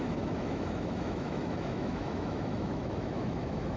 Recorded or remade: remade